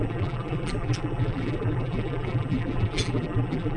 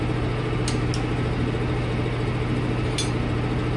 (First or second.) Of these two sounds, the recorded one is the second